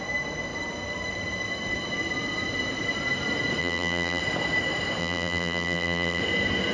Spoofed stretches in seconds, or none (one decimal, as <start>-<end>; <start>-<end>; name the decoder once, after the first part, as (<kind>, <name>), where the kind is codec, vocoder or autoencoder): 3.6-4.2 (vocoder, BigVGAN v2); 5.0-6.2